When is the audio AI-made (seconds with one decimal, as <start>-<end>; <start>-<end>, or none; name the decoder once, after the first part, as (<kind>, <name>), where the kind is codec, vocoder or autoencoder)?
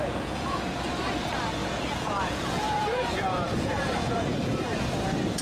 0.0-0.7 (vocoder, Vocos); 1.6-4.8